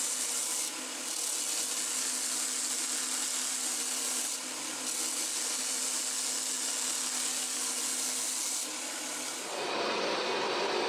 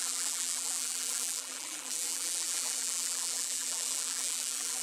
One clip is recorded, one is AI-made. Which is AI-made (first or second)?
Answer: second